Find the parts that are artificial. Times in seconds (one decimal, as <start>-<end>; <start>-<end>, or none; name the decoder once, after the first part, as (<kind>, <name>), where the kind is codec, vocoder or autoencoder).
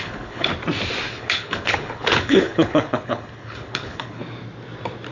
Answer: 0.0-0.5 (codec, HILCodec); 1.1-4.2